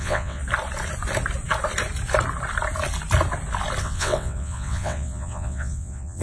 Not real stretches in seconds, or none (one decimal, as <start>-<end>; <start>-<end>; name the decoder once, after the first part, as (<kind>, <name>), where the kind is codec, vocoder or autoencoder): 0.0-0.4 (vocoder, WaveNeXt); 3.8-6.2